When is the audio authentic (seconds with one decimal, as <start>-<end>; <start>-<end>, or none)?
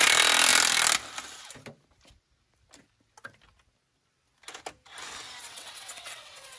0.0-5.4